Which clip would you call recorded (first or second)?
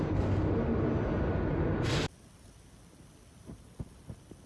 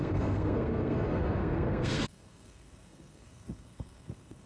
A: first